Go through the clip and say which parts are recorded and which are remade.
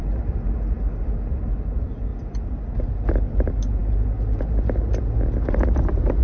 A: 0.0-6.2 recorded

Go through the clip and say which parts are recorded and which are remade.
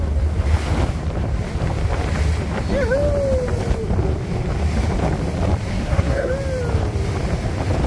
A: 0.0-5.7 recorded; 5.7-6.3 remade; 6.3-7.9 recorded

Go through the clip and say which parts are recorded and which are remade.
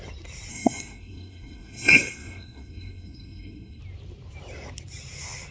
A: 0.0-0.5 recorded; 0.5-3.8 remade; 3.8-5.5 recorded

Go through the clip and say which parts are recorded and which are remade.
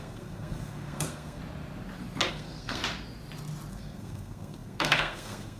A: 0.0-1.4 remade; 1.4-2.3 recorded; 2.3-2.8 remade; 2.8-3.7 recorded; 3.7-5.6 remade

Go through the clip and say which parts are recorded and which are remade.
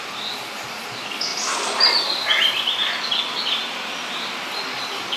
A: 0.0-5.2 recorded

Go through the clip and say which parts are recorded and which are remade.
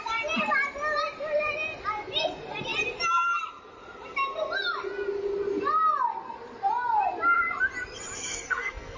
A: 0.0-8.3 recorded; 8.3-9.0 remade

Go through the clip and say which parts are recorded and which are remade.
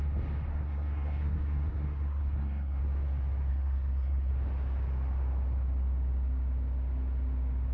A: 0.0-0.5 recorded; 0.5-2.8 remade; 2.8-3.5 recorded; 3.5-4.3 remade; 4.3-7.7 recorded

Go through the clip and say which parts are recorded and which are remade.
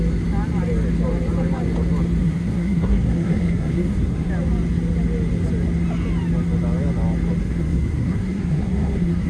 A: 0.0-2.2 recorded; 2.2-4.3 remade; 4.3-7.4 recorded; 7.4-9.3 remade